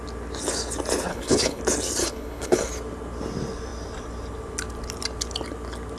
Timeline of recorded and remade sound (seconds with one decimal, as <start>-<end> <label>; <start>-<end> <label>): 0.0-1.1 recorded; 1.1-1.6 remade; 1.6-2.0 recorded; 2.0-2.7 remade; 2.7-6.0 recorded